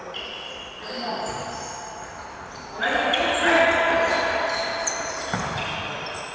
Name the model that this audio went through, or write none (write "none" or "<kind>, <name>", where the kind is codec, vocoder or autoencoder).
none